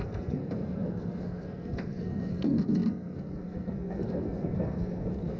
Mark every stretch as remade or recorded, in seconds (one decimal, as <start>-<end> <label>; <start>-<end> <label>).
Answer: 0.0-5.4 remade